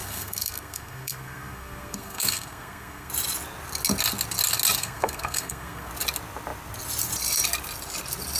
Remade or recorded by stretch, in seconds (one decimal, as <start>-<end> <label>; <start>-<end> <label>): 0.0-3.1 remade; 3.1-4.8 recorded; 4.8-5.9 remade; 5.9-8.4 recorded